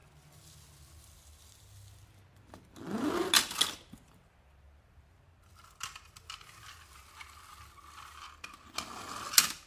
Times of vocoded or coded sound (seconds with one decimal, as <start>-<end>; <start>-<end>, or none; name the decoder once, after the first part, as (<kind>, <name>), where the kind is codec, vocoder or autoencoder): none